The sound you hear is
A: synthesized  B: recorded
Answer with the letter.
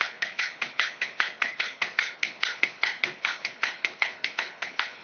A